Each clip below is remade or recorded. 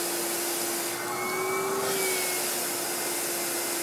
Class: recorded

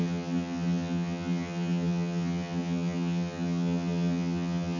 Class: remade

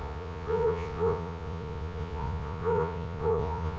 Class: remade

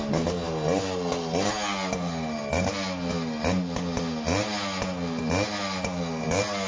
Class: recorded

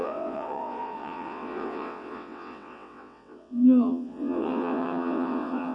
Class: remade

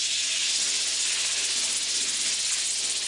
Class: recorded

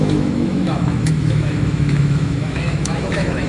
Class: remade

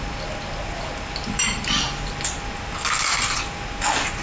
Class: recorded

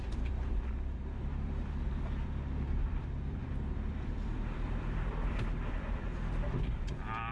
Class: remade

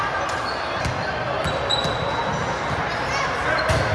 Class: recorded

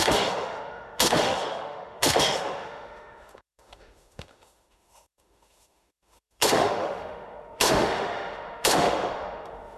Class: remade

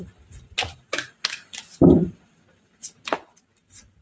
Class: recorded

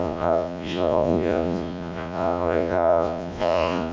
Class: remade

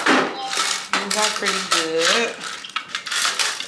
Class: recorded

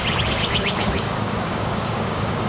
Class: remade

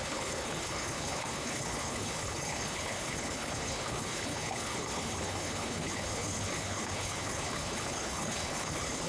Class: remade